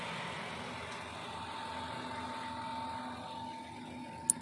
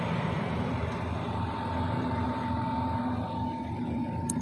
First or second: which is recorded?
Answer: first